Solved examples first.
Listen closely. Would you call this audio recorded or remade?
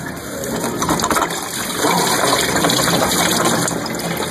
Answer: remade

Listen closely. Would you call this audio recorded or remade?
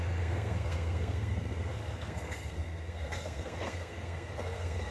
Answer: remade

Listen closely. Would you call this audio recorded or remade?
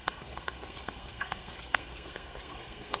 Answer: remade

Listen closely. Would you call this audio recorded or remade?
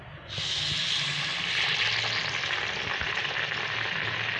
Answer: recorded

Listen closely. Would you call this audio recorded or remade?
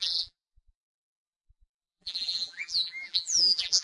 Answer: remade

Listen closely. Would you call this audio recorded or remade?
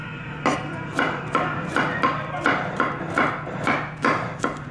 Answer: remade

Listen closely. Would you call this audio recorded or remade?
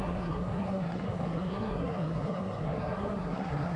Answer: remade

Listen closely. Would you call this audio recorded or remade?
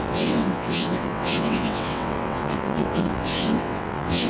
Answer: remade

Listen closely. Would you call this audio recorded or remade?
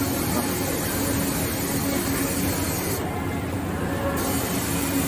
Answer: recorded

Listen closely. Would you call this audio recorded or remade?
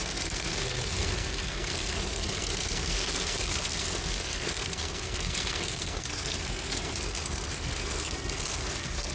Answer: remade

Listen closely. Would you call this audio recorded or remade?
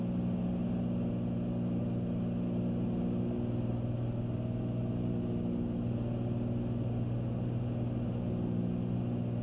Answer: recorded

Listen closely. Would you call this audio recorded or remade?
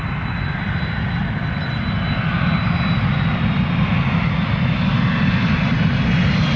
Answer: recorded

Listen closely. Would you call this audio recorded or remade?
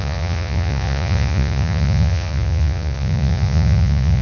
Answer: remade